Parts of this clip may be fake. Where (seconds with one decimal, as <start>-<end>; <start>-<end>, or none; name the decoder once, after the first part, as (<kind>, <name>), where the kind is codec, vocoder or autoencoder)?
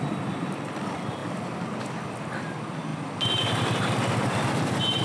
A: none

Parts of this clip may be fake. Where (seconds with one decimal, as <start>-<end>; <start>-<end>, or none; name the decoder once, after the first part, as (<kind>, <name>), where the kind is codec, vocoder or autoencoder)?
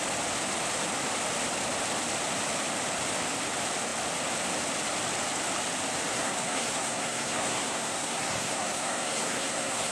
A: 6.1-9.9 (codec, SNAC)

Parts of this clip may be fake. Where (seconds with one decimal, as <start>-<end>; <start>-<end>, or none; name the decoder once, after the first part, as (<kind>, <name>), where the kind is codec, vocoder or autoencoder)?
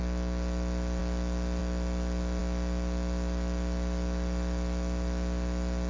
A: none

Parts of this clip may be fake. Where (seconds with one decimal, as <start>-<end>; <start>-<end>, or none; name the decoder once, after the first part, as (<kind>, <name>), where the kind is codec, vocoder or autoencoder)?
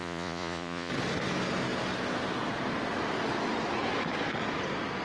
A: 0.0-0.9 (vocoder, Vocos)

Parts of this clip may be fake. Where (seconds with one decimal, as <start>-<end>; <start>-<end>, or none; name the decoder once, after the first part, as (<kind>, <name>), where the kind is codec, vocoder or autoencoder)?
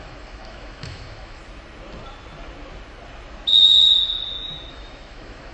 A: 0.0-1.4 (autoencoder, DAC-VAE); 4.7-5.5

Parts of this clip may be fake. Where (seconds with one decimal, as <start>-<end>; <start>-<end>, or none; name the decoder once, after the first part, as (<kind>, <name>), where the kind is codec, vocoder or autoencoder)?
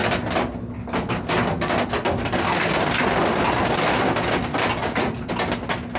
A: 4.8-5.3 (vocoder, Vocos)